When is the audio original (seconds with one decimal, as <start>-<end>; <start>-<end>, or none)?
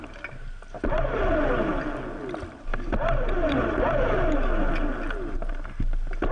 0.0-6.3